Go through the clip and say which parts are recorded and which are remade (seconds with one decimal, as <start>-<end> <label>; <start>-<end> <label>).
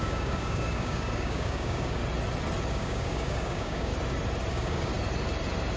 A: 0.0-2.0 remade; 2.0-2.7 recorded; 2.7-3.9 remade; 3.9-4.5 recorded; 4.5-4.9 remade; 4.9-5.8 recorded